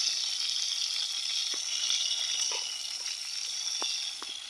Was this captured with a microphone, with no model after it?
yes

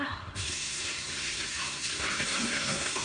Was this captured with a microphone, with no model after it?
no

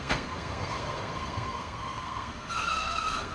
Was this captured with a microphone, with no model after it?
no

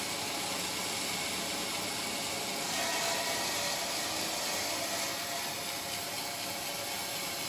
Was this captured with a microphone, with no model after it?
yes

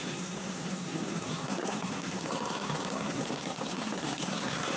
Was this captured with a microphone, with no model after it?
no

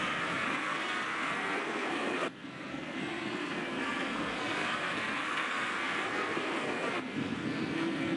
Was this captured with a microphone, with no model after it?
no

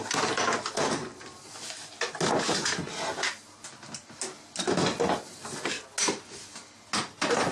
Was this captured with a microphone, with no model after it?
yes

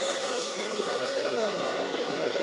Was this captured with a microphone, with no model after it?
no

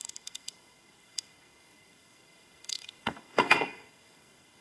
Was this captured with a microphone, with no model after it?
no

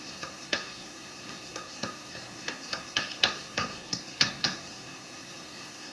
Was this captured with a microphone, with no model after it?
no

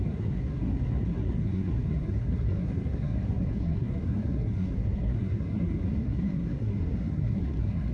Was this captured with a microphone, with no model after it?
no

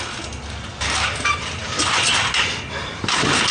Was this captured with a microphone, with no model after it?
yes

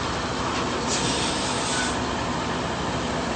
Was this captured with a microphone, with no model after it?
yes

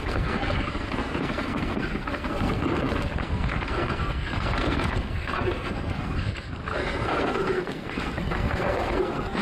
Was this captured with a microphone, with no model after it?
no